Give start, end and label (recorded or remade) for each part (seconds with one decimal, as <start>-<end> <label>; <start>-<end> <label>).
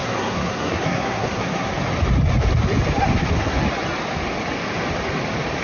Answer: 0.0-1.7 remade; 1.7-3.1 recorded; 3.1-3.6 remade; 3.6-5.6 recorded